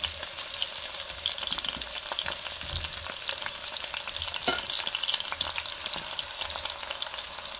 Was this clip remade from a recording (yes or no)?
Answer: no